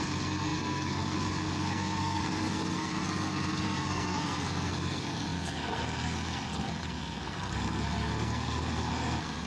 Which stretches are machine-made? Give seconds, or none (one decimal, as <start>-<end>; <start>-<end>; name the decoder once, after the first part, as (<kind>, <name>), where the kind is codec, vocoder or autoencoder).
0.0-9.5 (codec, SNAC)